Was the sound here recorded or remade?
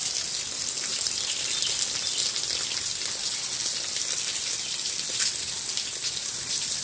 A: recorded